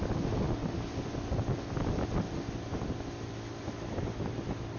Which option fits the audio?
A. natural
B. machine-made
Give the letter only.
A